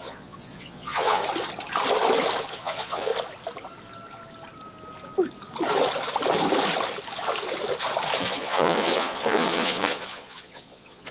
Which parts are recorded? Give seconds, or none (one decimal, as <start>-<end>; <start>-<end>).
1.2-2.5; 3.1-8.2